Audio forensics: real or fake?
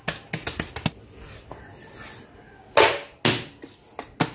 real